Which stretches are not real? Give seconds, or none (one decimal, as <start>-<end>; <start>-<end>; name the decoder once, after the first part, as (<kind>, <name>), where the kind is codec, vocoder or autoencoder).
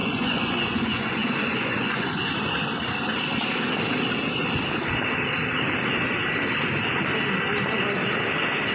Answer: 0.0-2.2 (vocoder, Vocos)